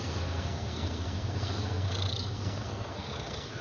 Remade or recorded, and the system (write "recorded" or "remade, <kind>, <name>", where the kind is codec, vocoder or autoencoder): remade, codec, SNAC